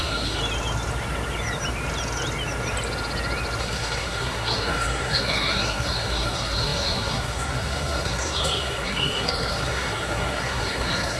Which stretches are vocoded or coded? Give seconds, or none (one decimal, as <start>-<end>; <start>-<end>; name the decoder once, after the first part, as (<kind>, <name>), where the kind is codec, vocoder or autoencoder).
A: 0.0-0.4 (codec, SNAC); 3.6-11.2